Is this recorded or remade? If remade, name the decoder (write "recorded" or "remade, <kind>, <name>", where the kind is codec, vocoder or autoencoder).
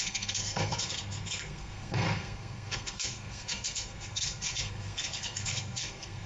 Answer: remade, codec, SNAC